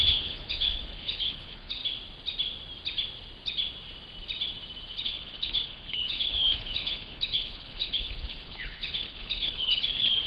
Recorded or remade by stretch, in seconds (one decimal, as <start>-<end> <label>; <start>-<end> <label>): 0.0-1.8 remade; 1.8-5.0 recorded; 5.0-10.3 remade